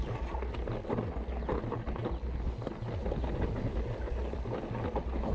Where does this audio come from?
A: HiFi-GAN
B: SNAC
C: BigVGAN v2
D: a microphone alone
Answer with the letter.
D